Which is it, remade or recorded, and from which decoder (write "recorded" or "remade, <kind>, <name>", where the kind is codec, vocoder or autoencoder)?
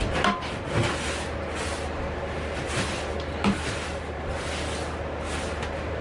recorded